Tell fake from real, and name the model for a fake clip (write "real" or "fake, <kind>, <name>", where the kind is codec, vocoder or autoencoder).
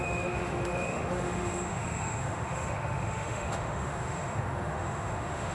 fake, autoencoder, DAC-VAE